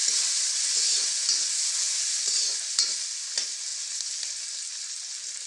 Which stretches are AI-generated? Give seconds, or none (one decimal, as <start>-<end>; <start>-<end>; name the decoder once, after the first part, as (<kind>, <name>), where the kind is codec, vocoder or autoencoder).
none